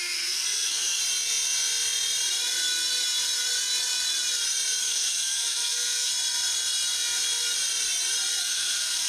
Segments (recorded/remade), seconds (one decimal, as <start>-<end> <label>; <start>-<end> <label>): 0.0-1.0 remade; 1.0-4.8 recorded; 4.8-6.1 remade; 6.1-8.4 recorded; 8.4-9.1 remade